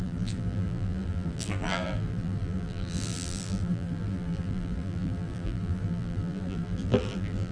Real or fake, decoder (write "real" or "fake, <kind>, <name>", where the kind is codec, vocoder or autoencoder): fake, vocoder, BigVGAN v2